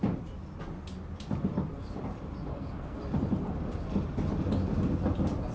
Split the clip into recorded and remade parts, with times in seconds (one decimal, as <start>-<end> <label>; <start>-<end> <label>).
0.0-2.5 recorded; 2.5-3.0 remade; 3.0-5.5 recorded